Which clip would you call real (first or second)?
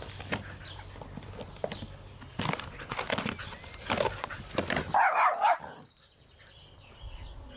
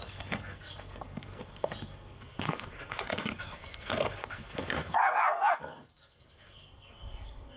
first